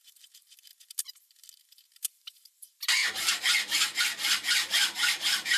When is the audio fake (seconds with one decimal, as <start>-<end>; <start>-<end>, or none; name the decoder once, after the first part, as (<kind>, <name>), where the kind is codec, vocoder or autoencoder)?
0.0-0.7 (vocoder, BigVGAN v2); 1.5-3.0; 4.0-5.6